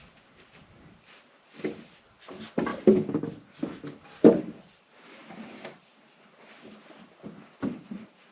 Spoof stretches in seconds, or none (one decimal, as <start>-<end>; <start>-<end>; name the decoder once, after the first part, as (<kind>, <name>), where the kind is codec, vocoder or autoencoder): 2.7-3.2 (vocoder, BigVGAN v2); 5.2-5.8